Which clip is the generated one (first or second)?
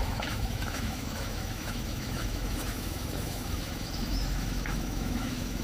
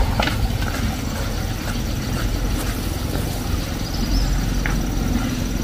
first